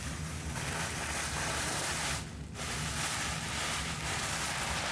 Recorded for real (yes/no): yes